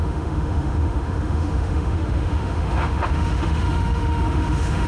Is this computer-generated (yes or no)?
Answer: yes